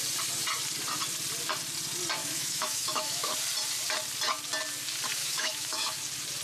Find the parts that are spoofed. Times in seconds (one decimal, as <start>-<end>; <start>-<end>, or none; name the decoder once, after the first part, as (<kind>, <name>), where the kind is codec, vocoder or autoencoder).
2.2-3.3 (autoencoder, DAC-VAE); 5.2-6.0